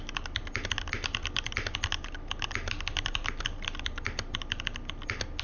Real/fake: real